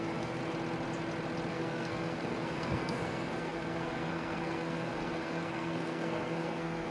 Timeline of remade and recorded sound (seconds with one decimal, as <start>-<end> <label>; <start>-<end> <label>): 0.0-0.4 remade; 0.4-1.5 recorded; 1.5-6.9 remade